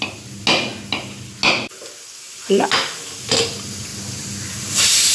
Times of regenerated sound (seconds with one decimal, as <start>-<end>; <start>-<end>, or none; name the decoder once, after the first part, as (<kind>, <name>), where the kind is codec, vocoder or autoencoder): none